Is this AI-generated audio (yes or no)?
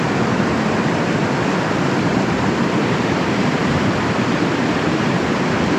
yes